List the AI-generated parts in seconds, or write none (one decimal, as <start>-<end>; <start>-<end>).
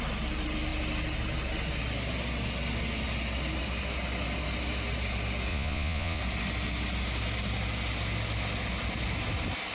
5.5-6.2